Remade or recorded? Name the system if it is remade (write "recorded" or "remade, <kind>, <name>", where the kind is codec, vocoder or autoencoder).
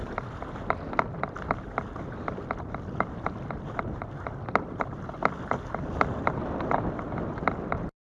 recorded